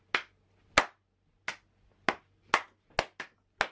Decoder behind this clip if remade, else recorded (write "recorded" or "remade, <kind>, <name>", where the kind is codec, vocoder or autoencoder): recorded